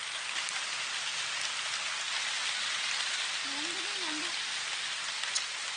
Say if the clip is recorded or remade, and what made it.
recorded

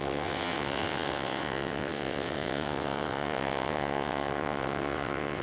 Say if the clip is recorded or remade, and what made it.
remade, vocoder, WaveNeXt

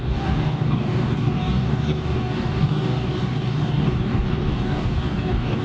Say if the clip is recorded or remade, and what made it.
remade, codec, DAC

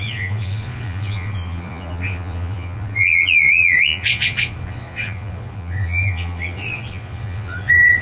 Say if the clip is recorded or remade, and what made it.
remade, vocoder, Vocos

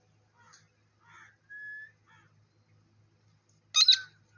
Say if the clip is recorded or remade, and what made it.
recorded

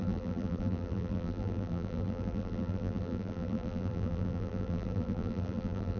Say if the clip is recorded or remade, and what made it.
remade, vocoder, BigVGAN v2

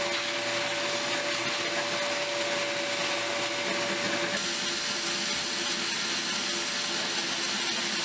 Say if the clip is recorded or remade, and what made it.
recorded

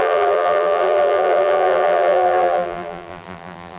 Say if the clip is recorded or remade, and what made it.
remade, vocoder, BigVGAN v2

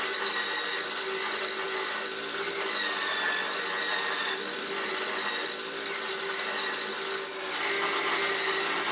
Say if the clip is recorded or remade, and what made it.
recorded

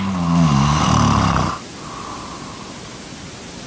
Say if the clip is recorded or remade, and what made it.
recorded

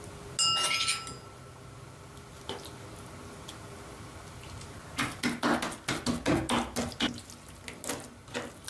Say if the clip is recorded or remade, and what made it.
recorded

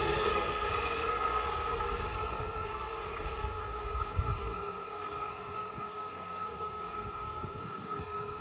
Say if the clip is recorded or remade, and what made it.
remade, codec, SNAC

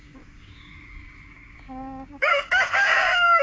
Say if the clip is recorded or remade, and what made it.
remade, codec, DAC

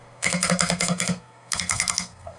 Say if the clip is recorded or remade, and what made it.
remade, codec, SNAC